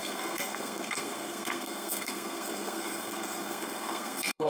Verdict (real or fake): fake